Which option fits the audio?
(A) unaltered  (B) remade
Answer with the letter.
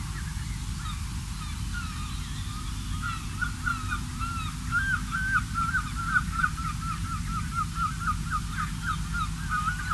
A